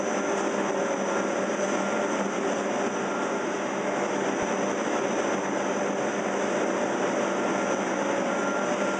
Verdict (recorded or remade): recorded